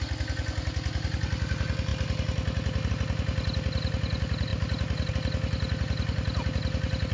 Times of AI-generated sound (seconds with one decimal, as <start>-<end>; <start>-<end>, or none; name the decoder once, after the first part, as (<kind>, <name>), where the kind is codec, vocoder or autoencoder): none